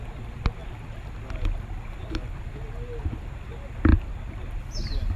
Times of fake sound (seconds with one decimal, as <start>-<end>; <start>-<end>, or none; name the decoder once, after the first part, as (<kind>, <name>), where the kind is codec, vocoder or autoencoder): none